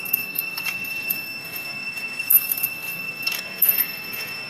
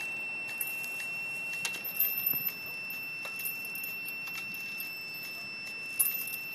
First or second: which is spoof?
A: first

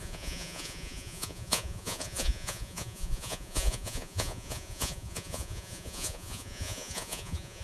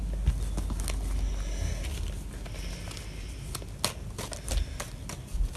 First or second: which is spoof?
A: first